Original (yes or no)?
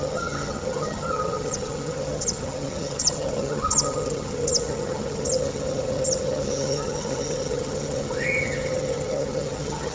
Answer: no